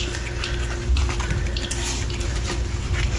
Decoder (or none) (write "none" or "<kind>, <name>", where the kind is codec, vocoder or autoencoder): none